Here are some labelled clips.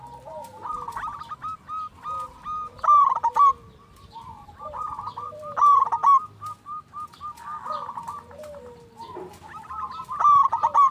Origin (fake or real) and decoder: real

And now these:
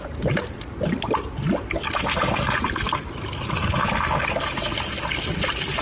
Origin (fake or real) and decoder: real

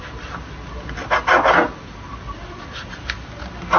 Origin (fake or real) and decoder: real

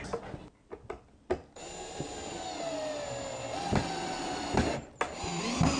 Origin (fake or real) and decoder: real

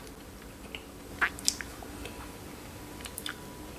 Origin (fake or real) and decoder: real